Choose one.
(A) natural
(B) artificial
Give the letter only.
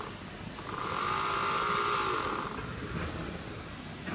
A